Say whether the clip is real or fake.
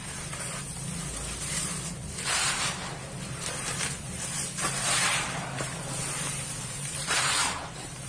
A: fake